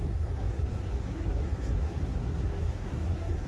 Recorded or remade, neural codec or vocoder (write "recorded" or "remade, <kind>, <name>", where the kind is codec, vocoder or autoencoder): remade, codec, SNAC